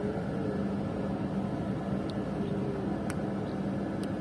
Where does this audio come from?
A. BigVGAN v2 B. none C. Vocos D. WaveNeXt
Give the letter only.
B